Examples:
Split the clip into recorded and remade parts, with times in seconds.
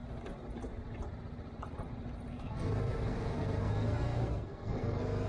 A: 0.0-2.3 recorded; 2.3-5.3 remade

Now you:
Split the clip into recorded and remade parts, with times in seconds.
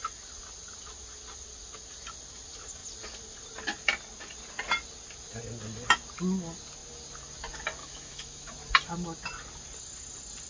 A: 0.0-7.8 recorded; 7.8-8.5 remade; 8.5-10.5 recorded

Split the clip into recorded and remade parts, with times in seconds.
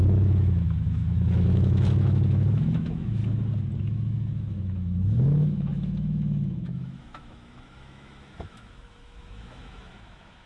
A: 0.0-3.2 remade; 3.2-3.8 recorded; 3.8-10.5 remade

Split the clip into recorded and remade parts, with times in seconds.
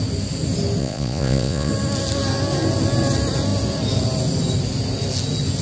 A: 0.0-0.8 recorded; 0.8-1.7 remade; 1.7-5.6 recorded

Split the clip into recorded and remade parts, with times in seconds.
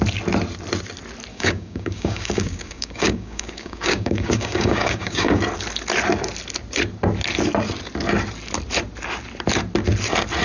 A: 0.0-1.3 recorded; 1.3-5.4 remade; 5.4-10.4 recorded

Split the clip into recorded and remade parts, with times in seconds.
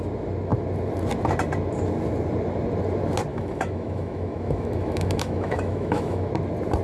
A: 0.0-3.3 recorded; 3.3-6.3 remade; 6.3-6.8 recorded